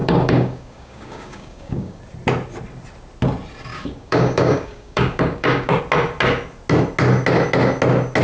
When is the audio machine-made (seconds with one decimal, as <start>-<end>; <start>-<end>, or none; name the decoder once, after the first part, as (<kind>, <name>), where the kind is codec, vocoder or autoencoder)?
0.0-2.0 (codec, DAC); 3.7-5.8